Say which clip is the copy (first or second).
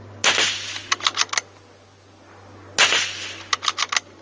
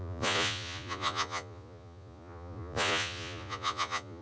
second